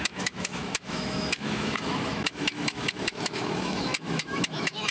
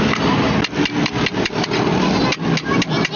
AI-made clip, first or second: first